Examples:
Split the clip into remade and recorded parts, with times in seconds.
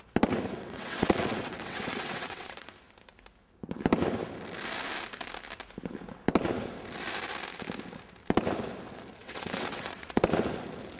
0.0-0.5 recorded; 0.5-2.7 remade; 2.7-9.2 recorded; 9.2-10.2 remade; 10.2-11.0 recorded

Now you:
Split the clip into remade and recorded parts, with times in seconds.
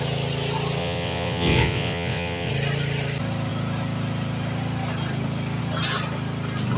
0.0-0.8 recorded; 0.8-2.5 remade; 2.5-6.8 recorded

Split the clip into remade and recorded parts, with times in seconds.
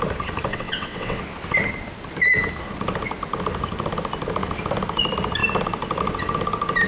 0.0-0.5 recorded; 0.5-1.2 remade; 1.2-6.9 recorded